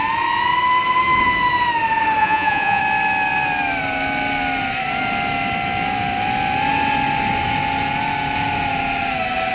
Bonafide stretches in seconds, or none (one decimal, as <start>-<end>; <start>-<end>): 0.0-2.2; 2.8-9.5